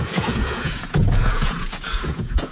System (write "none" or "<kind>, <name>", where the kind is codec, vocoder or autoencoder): vocoder, Vocos